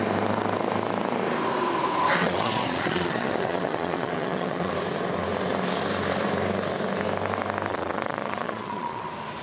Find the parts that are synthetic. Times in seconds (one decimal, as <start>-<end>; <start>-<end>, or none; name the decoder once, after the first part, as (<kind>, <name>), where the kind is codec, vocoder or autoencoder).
2.2-4.7 (vocoder, Vocos); 7.7-9.0